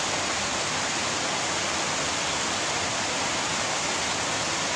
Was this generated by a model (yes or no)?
no